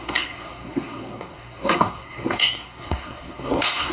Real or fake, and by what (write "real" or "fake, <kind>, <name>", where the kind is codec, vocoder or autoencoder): fake, codec, SNAC